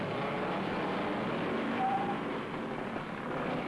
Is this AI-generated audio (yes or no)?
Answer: no